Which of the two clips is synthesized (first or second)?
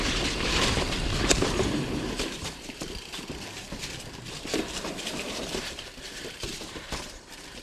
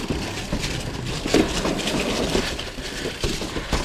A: first